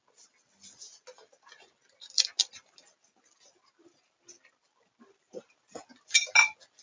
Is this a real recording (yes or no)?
yes